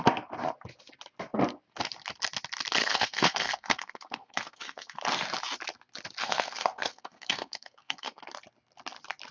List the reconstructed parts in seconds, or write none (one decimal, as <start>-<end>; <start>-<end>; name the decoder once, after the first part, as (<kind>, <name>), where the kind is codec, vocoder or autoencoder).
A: 2.8-5.0 (codec, SNAC); 6.2-8.2